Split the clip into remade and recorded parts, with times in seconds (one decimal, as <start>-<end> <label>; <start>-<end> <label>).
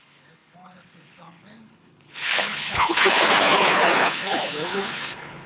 0.0-5.5 remade